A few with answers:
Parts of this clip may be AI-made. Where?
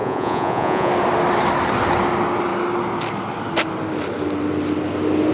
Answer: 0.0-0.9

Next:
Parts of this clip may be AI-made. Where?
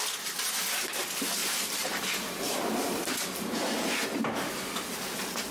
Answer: 1.4-3.9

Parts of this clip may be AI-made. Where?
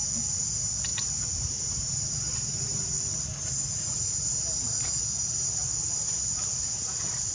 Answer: none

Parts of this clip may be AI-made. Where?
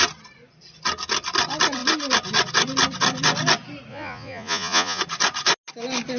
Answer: 3.9-5.0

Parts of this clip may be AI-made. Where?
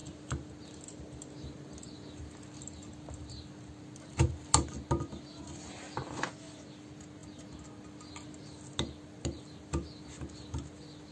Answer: none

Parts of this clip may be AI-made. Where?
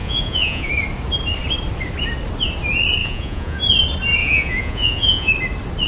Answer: 0.0-0.7; 3.0-3.6; 4.2-5.3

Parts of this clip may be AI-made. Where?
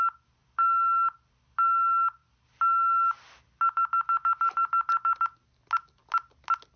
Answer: none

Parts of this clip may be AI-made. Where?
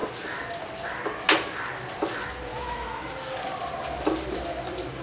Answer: 2.5-3.1